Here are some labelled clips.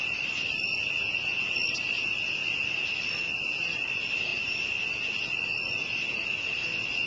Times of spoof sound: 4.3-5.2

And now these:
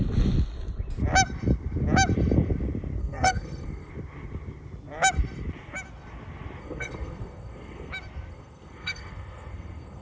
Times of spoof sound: 3.0-3.9; 6.6-7.9; 8.3-10.0

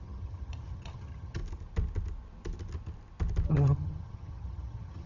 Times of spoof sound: 0.0-1.4; 3.5-5.1

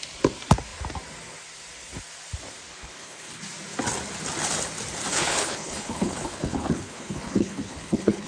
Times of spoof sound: 2.7-3.4; 5.1-8.3

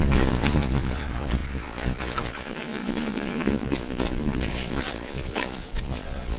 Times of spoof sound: 0.0-6.4

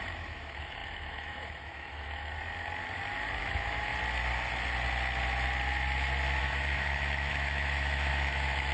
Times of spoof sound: 0.0-2.3; 3.4-3.9; 6.4-8.7